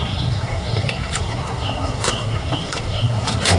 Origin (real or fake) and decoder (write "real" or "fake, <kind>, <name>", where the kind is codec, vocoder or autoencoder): fake, codec, SNAC